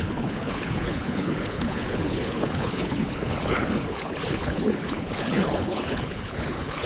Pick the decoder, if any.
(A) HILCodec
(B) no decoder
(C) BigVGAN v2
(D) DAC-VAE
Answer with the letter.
A